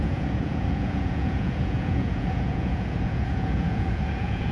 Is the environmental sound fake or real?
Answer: fake